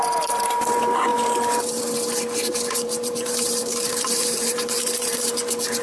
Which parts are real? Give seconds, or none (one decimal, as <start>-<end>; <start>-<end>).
0.0-1.1; 1.8-2.5; 5.3-5.8